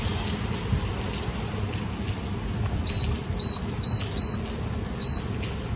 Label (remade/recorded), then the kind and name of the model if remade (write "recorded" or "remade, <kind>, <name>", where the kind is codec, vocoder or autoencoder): recorded